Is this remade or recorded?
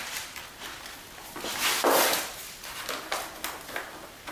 recorded